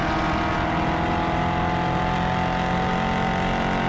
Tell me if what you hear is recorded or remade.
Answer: recorded